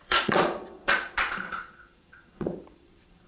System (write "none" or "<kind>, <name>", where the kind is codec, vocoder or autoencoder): vocoder, Vocos